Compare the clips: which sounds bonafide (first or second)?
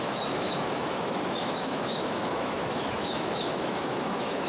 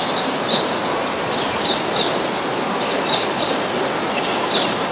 second